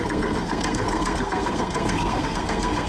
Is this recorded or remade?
remade